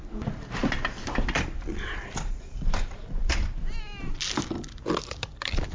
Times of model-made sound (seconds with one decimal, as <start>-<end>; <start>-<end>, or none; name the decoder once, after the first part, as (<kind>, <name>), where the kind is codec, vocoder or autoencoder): none